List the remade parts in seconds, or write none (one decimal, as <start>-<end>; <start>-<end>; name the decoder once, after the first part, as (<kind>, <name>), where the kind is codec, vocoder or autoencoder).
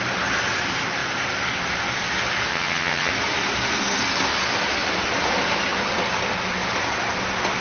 2.5-3.1 (vocoder, HiFi-GAN)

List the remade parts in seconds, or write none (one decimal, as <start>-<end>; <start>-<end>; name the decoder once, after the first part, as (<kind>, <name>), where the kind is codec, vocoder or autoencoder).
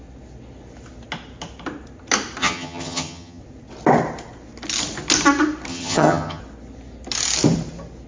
2.4-3.4 (vocoder, HiFi-GAN); 5.7-6.4